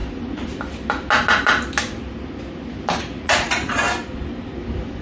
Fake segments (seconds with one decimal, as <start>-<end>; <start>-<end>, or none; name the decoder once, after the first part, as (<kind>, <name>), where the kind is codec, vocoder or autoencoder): 3.0-3.8 (vocoder, Vocos)